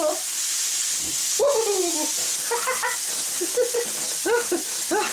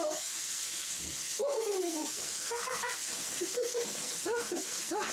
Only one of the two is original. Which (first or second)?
first